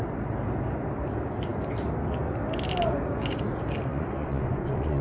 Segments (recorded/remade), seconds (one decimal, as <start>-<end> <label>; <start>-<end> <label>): 0.0-3.9 recorded; 3.9-5.0 remade